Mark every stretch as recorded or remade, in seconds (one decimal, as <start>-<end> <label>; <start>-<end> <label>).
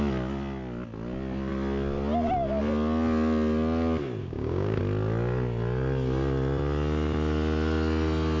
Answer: 0.0-4.2 recorded; 4.2-4.8 remade; 4.8-8.4 recorded